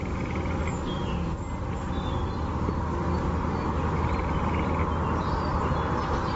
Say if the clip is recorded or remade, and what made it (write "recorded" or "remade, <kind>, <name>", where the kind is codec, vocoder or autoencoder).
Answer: recorded